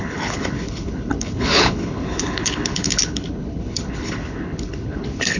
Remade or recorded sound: remade